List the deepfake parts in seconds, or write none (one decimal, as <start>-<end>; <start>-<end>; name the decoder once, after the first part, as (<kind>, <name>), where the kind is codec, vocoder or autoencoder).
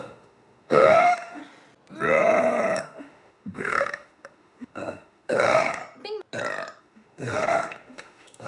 0.0-1.4 (autoencoder, DAC-VAE); 2.8-5.8; 6.8-8.5